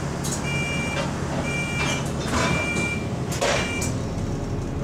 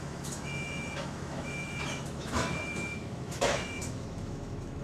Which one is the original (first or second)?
first